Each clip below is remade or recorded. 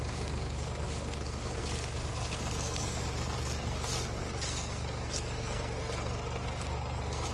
remade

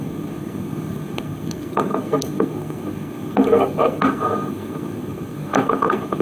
remade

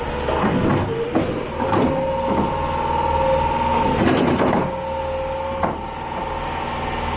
recorded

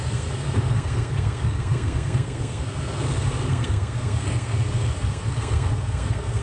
remade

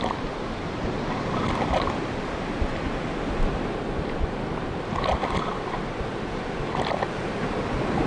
recorded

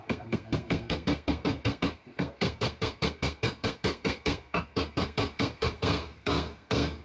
remade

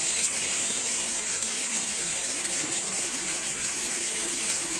remade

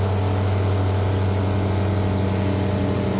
recorded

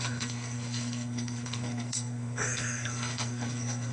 remade